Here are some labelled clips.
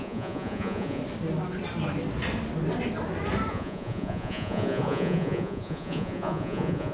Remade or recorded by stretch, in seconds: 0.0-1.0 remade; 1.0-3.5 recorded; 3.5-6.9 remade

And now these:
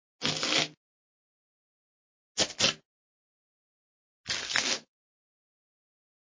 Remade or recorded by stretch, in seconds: 0.0-1.3 recorded; 1.3-2.1 remade; 2.1-4.4 recorded; 4.4-6.3 remade

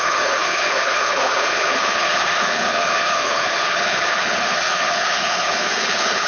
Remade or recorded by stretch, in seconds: 0.0-6.3 remade

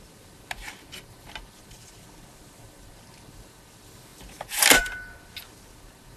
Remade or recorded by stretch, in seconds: 0.0-6.2 recorded

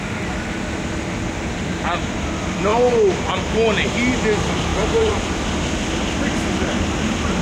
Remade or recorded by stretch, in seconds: 0.0-4.7 recorded; 4.7-5.3 remade; 5.3-7.4 recorded

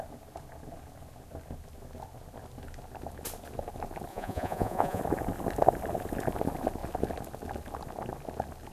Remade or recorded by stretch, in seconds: 0.0-4.1 recorded; 4.1-5.0 remade; 5.0-8.7 recorded

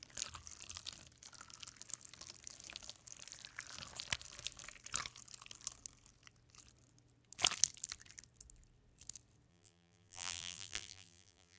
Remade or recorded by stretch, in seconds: 0.0-9.5 recorded; 9.5-11.6 remade

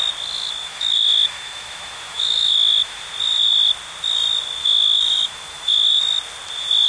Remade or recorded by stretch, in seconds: 0.0-0.6 recorded; 0.6-3.0 remade; 3.0-4.6 recorded; 4.6-6.0 remade; 6.0-6.9 recorded